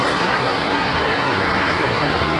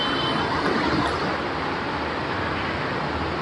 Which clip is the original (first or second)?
second